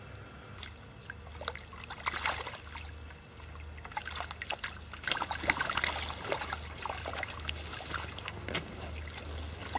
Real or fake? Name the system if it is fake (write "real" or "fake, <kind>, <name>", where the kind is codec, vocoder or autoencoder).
real